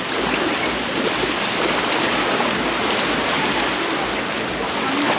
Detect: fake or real real